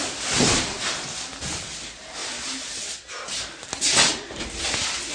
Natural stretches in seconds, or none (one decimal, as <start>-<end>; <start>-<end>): 0.0-4.1; 4.6-5.1